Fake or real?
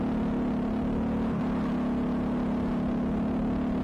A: real